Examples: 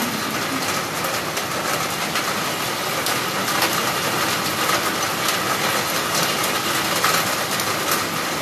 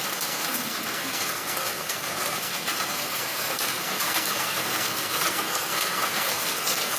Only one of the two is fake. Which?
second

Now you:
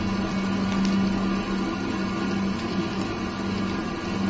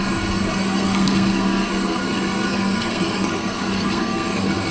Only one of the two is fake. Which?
second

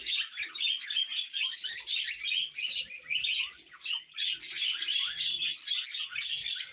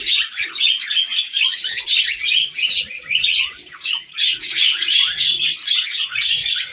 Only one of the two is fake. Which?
second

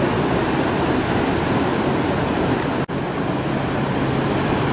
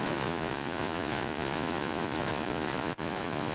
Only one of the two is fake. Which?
second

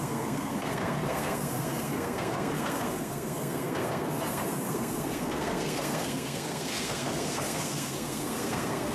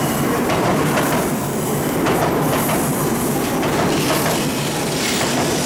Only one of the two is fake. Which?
first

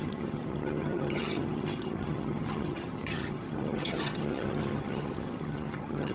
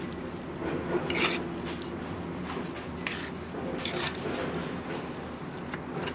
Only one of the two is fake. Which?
first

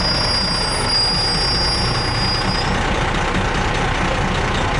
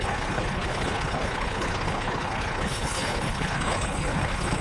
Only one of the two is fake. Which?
second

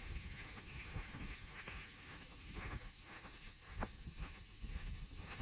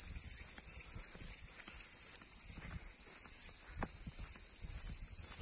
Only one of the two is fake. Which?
first